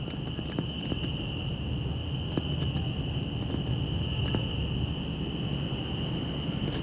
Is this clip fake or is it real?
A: real